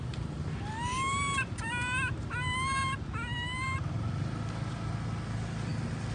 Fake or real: real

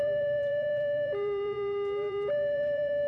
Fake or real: fake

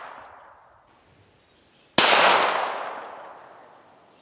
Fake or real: real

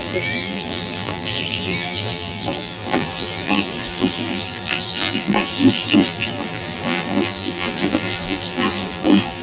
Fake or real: fake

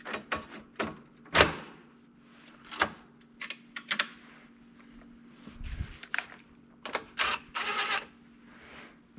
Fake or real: real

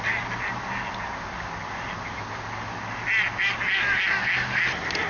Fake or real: real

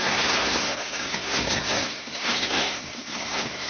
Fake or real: fake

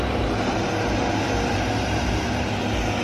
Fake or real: fake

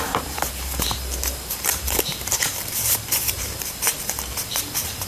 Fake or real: fake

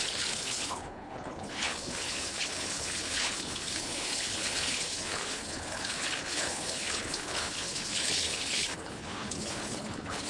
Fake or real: fake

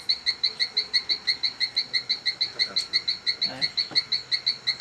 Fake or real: real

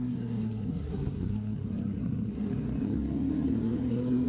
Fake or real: fake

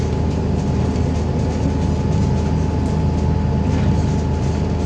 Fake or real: real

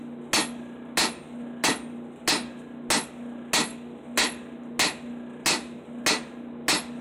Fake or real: real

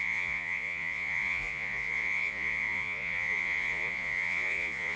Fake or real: fake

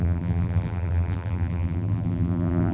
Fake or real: fake